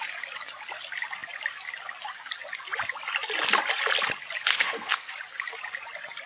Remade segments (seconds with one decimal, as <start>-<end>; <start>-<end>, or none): 4.5-5.1